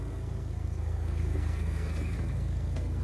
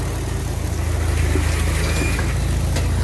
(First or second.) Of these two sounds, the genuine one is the second